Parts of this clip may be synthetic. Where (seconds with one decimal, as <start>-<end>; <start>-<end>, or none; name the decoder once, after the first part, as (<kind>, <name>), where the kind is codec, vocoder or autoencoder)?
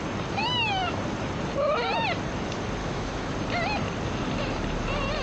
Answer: 0.4-1.0 (autoencoder, DAC-VAE); 2.8-3.3